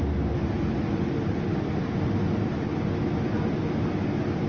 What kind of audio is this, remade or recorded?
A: recorded